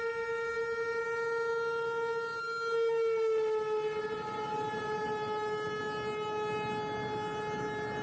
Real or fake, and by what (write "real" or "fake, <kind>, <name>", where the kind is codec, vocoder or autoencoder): real